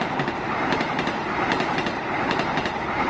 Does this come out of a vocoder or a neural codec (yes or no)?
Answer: no